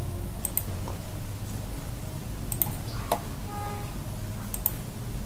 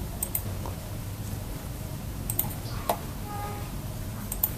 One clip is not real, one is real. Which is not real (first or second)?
second